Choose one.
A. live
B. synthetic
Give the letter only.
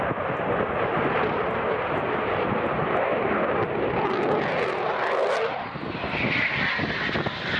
A